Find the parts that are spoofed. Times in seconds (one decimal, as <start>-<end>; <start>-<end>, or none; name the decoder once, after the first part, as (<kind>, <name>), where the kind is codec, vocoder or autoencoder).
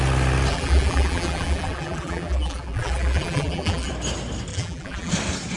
0.5-3.9 (vocoder, BigVGAN v2); 4.5-5.1